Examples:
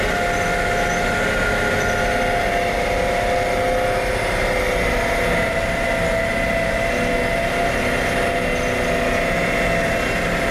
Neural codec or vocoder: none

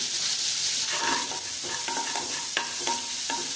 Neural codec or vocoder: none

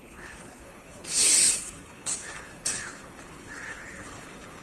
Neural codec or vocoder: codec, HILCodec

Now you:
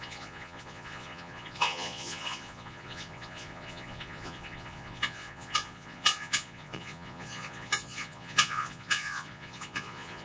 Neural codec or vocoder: vocoder, Vocos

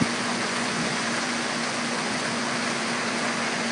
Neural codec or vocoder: vocoder, Vocos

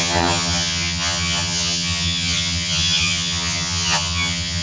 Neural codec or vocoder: vocoder, HiFi-GAN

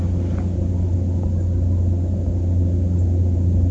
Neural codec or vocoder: none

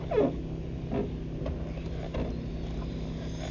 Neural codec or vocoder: none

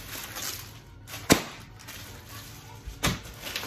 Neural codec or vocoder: none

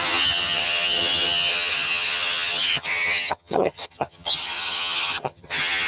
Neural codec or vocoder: vocoder, HiFi-GAN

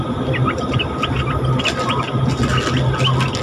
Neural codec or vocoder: none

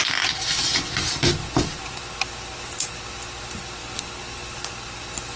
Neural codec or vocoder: none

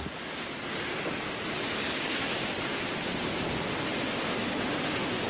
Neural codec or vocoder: none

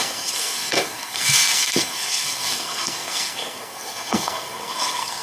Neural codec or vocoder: codec, SNAC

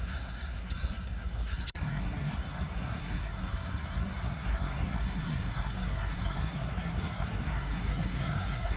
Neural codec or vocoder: codec, SNAC